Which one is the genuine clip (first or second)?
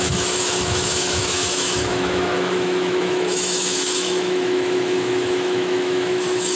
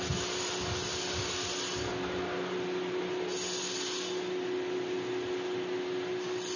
second